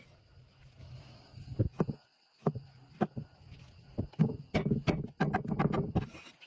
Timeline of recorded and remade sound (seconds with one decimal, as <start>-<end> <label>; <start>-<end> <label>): 0.0-0.8 recorded; 0.8-1.6 remade; 1.6-6.5 recorded